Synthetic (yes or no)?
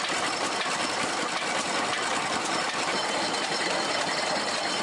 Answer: no